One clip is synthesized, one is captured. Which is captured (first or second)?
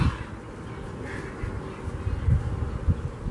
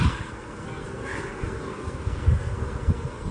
first